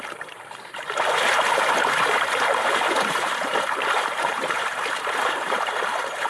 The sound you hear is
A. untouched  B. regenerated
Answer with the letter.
B